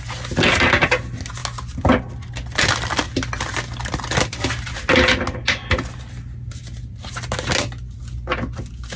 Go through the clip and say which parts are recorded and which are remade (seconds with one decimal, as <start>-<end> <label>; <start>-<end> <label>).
0.0-9.0 recorded